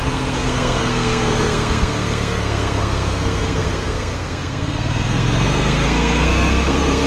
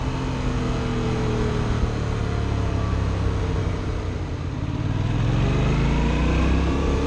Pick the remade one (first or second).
first